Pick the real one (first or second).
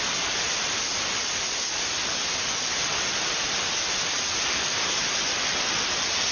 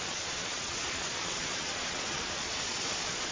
first